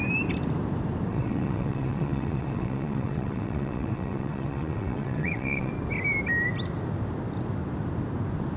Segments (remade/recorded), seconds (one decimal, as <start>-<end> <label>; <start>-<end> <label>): 0.0-1.1 recorded; 1.1-5.7 remade; 5.7-8.6 recorded